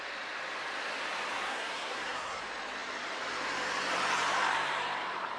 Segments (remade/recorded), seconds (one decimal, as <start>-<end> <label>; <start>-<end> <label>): 0.0-1.5 recorded; 1.5-2.4 remade; 2.4-5.4 recorded